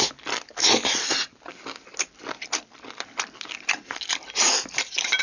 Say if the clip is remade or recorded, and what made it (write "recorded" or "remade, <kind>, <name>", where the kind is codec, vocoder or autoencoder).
recorded